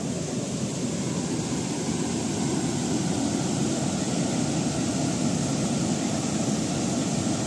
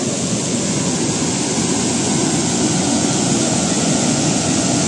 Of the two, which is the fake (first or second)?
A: second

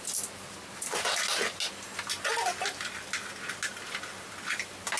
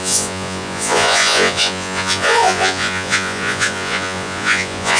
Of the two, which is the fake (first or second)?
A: second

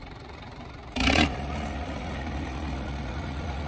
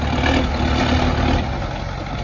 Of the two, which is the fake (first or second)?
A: first